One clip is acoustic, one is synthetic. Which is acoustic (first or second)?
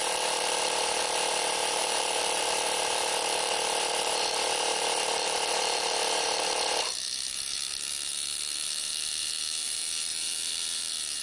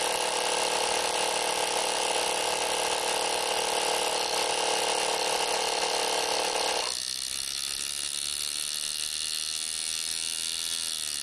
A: second